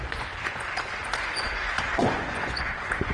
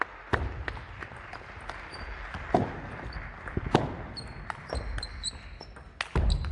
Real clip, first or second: second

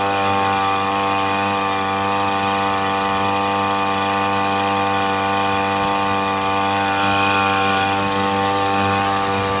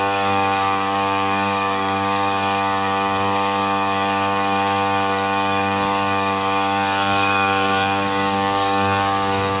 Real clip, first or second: first